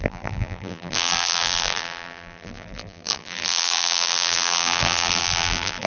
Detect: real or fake fake